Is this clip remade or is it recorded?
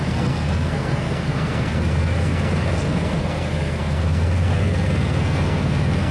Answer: remade